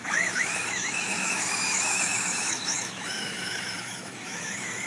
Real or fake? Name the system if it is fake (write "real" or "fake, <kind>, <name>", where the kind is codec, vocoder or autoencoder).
fake, autoencoder, DAC-VAE